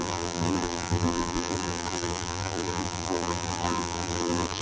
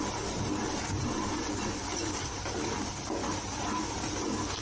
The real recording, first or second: second